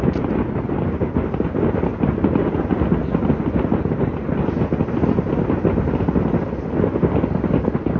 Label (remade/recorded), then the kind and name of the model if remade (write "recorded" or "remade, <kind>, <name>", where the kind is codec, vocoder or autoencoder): recorded